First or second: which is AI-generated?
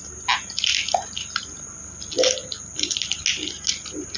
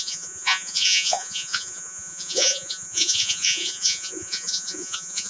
second